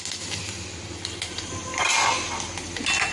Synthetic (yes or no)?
no